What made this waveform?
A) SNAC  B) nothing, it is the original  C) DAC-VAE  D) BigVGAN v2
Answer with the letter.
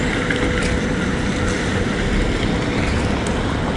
B